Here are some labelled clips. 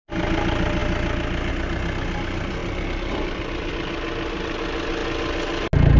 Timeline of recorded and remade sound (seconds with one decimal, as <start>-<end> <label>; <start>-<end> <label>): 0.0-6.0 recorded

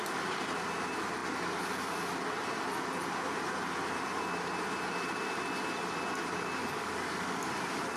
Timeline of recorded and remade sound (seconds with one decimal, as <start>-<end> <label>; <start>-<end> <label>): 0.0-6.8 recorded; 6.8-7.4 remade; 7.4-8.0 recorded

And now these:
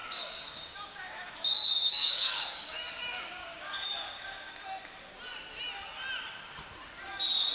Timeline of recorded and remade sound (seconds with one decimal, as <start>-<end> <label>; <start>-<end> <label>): 0.0-4.5 remade; 4.5-7.5 recorded

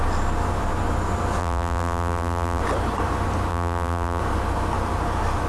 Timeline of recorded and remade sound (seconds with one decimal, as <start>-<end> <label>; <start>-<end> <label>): 0.0-1.4 recorded; 1.4-2.6 remade; 2.6-3.5 recorded; 3.5-4.2 remade; 4.2-5.5 recorded

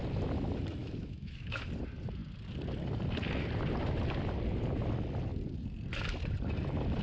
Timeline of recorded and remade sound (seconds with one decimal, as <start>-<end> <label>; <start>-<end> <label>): 0.0-0.8 recorded; 0.8-1.6 remade; 1.6-7.0 recorded

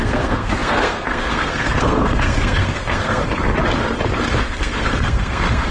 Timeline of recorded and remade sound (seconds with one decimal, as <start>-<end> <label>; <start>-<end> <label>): 0.0-3.2 remade; 3.2-4.4 recorded; 4.4-5.7 remade

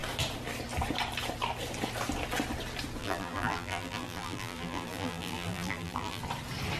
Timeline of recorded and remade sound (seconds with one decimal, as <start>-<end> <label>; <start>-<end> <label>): 0.0-3.0 recorded; 3.0-6.2 remade; 6.2-6.8 recorded